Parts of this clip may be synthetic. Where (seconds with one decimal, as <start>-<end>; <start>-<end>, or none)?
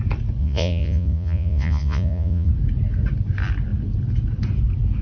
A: 0.4-2.5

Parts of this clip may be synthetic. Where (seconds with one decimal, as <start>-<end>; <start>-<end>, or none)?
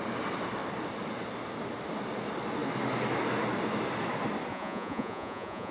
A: 4.5-5.7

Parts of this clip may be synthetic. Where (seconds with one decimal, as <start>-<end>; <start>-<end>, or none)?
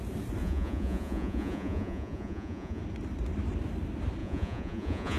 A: 0.4-2.8; 4.2-5.2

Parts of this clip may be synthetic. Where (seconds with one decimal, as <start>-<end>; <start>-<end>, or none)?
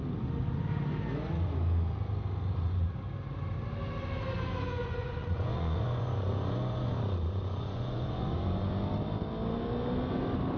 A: 4.5-8.7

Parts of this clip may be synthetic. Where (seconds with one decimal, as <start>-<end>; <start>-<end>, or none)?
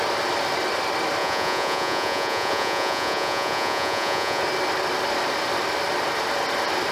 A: 1.2-4.4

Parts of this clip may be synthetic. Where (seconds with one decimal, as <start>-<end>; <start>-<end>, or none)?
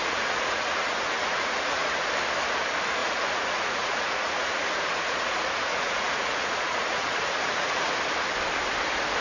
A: 0.0-2.1; 3.0-7.9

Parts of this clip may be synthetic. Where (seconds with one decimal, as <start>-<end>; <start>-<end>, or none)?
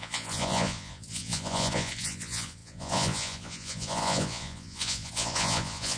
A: 0.0-6.0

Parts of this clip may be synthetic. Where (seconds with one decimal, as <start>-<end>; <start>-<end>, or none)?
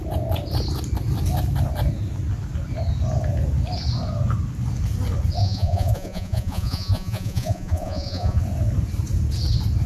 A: 5.4-8.4